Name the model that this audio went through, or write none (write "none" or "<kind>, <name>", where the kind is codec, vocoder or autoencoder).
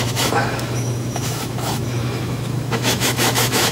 autoencoder, DAC-VAE